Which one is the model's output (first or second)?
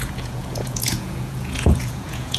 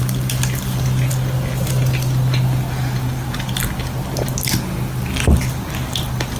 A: first